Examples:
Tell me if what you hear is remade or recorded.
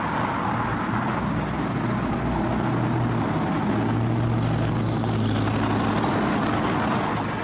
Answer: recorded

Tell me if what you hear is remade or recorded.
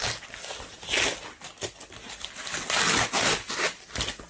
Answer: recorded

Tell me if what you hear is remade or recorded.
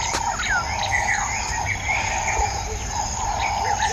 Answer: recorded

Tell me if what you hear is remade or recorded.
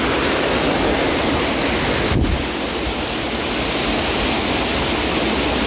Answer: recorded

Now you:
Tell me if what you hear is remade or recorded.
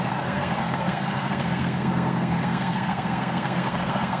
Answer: remade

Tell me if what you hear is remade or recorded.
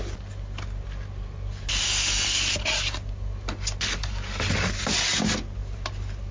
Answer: recorded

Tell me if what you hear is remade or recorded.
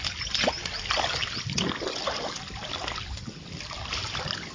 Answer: recorded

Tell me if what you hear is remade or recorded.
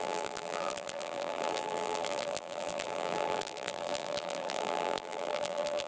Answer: remade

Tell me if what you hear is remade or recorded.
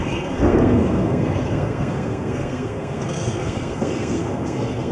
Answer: remade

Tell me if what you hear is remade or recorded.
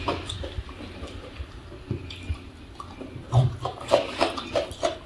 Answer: recorded